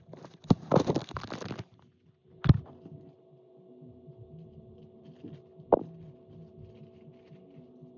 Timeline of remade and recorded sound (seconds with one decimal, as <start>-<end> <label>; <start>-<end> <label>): 0.0-8.0 recorded